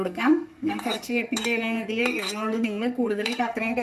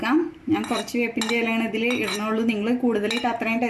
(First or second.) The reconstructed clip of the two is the first